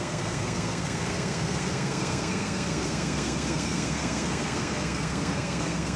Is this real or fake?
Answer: fake